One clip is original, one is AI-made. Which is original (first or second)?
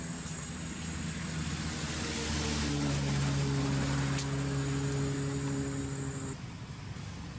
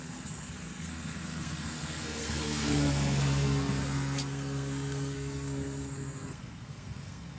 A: first